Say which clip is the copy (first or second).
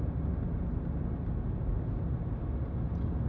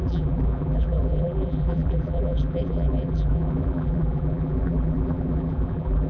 second